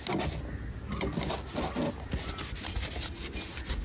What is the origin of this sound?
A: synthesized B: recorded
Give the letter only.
B